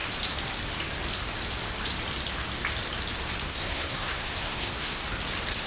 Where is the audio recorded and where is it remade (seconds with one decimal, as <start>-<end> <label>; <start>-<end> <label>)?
0.0-3.4 recorded; 3.4-5.0 remade; 5.0-5.7 recorded